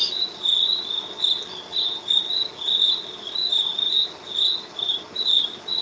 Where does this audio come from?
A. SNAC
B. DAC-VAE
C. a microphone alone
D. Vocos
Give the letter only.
C